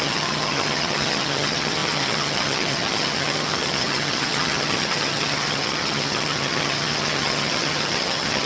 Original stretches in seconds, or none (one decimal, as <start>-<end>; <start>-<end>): none